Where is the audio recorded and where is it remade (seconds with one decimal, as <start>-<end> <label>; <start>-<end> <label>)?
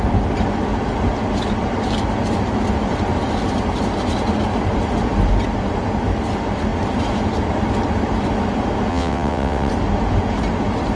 0.0-8.9 recorded; 8.9-9.7 remade; 9.7-11.0 recorded